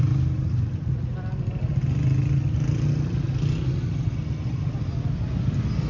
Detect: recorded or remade recorded